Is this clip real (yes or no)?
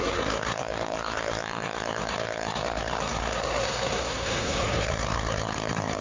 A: no